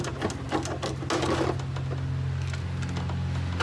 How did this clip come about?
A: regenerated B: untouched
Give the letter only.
B